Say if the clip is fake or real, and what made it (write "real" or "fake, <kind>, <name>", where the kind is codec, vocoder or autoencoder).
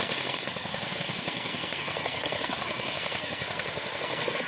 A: fake, codec, SNAC